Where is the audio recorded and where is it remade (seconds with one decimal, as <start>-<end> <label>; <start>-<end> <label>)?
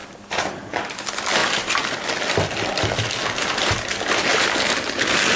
0.0-0.5 remade; 0.5-5.4 recorded